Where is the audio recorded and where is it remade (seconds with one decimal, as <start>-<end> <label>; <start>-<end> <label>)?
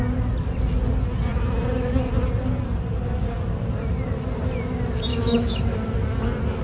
0.0-5.1 recorded; 5.1-5.6 remade; 5.6-6.6 recorded